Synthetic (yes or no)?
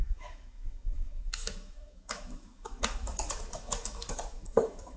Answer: yes